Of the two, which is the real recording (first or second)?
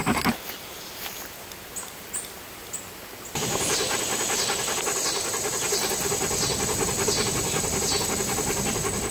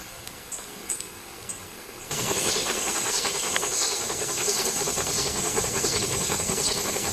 first